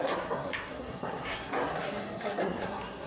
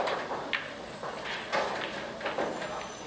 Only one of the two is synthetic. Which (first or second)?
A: first